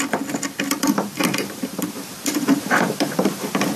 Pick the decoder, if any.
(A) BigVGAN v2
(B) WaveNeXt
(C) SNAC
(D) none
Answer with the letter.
A